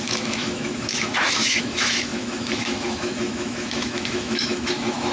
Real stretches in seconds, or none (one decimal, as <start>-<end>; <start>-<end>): none